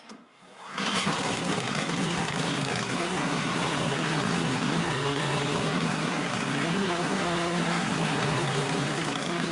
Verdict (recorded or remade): remade